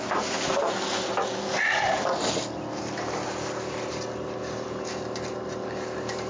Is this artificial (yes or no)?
no